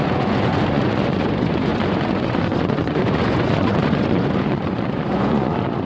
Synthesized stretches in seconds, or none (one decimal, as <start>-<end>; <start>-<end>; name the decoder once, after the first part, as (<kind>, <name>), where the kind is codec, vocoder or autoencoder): 0.0-5.8 (vocoder, Vocos)